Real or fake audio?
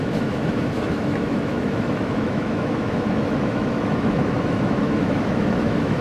fake